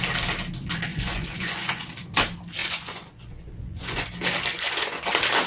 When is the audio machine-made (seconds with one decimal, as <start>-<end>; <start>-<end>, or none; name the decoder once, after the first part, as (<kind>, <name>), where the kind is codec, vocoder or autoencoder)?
0.9-1.9 (vocoder, Vocos); 2.6-4.0; 4.5-5.1